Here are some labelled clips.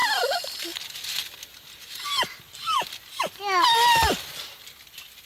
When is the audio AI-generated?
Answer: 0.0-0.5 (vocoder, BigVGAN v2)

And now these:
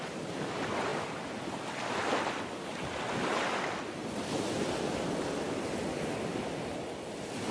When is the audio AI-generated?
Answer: 4.0-6.1 (vocoder, BigVGAN v2)